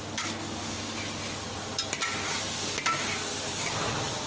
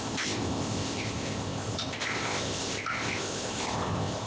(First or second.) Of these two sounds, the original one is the first